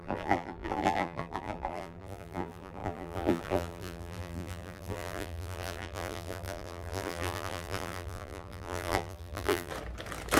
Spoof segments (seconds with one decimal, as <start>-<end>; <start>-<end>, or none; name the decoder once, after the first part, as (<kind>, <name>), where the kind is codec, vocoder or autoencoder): 0.0-9.7 (vocoder, BigVGAN v2)